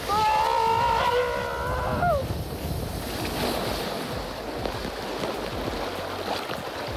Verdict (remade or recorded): recorded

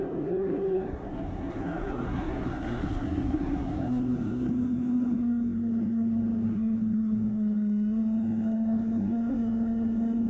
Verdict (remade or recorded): remade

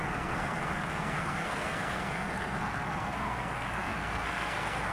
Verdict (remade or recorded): remade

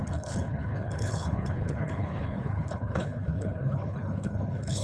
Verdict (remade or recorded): remade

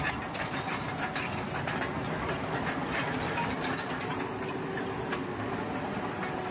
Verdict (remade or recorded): recorded